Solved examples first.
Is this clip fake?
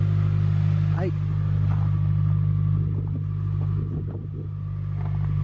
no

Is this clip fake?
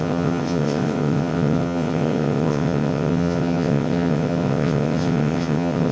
yes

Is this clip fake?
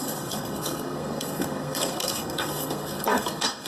yes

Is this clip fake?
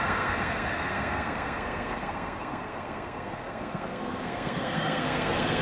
yes